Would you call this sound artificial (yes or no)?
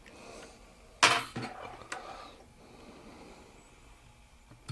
no